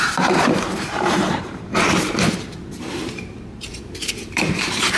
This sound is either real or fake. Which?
fake